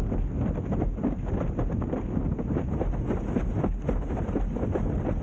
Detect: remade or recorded recorded